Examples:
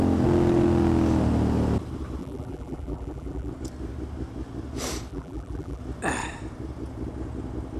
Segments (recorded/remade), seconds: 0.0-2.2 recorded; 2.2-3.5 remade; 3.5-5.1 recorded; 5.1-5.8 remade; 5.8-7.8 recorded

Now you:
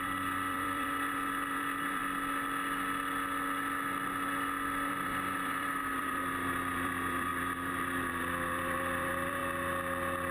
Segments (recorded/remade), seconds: 0.0-2.0 remade; 2.0-4.9 recorded; 4.9-9.4 remade; 9.4-10.3 recorded